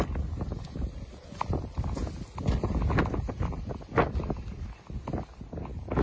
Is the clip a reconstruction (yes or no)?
no